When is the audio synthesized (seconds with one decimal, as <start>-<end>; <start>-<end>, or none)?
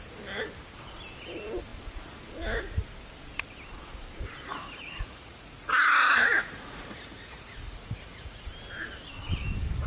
4.5-8.4